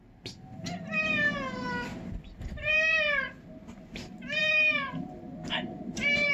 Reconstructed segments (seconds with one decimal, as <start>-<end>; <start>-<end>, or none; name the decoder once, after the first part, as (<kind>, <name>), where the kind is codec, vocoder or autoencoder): 1.9-3.8 (vocoder, BigVGAN v2); 4.4-6.3